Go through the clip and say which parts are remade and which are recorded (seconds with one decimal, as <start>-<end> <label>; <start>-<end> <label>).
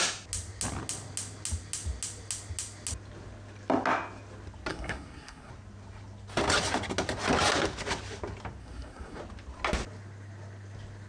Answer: 0.0-4.7 recorded; 4.7-5.5 remade; 5.5-8.6 recorded; 8.6-9.2 remade; 9.2-11.1 recorded